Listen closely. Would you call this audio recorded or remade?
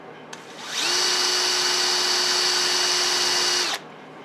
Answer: recorded